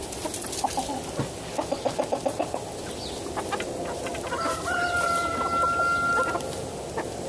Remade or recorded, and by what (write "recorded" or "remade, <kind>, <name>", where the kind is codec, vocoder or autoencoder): recorded